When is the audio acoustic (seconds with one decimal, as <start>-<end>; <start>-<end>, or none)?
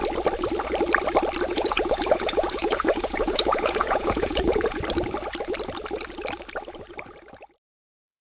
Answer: 0.0-1.5; 4.8-8.2